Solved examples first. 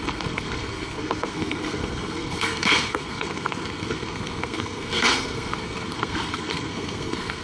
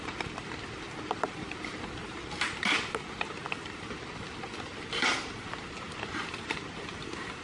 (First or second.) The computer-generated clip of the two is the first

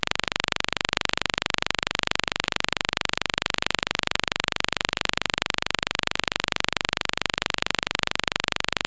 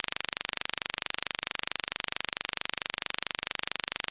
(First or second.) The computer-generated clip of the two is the first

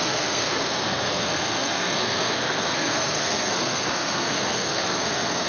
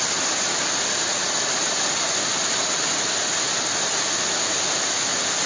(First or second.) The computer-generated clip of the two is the first